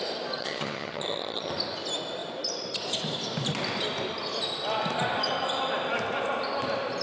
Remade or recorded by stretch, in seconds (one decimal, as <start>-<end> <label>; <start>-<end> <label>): 0.0-0.4 recorded; 0.4-1.5 remade; 1.5-7.0 recorded